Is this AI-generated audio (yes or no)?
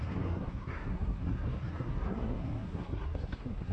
yes